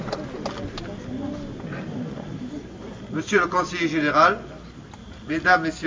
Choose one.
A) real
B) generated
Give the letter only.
A